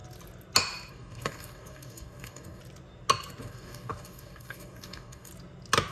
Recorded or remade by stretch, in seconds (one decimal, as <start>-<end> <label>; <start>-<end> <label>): 0.0-0.9 recorded; 0.9-2.6 remade; 2.6-3.4 recorded; 3.4-5.3 remade; 5.3-5.9 recorded